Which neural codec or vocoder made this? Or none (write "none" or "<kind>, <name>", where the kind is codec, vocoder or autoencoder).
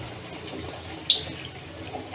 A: none